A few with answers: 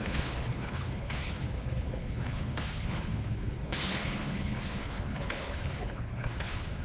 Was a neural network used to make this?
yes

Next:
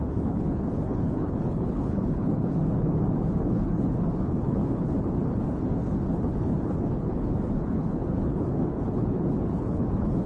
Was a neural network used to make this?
yes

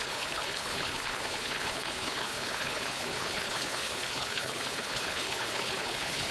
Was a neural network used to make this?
yes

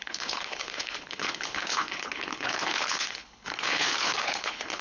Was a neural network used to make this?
yes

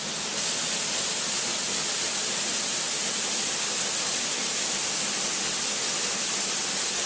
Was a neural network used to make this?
no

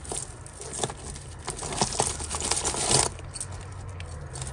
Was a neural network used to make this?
no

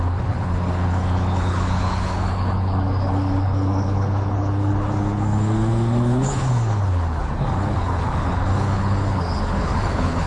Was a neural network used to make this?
yes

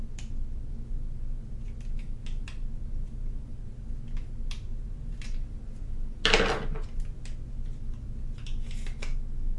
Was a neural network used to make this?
no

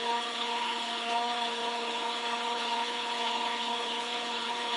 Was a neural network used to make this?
yes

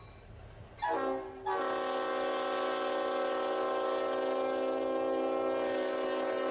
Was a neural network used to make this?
no